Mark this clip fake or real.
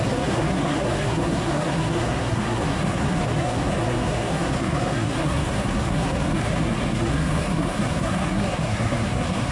fake